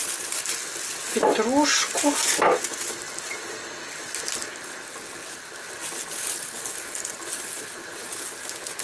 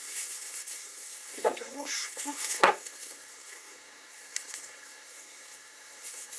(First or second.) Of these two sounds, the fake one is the second